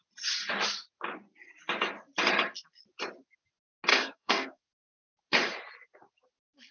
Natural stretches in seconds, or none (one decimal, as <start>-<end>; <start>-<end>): 0.0-3.9; 4.6-6.7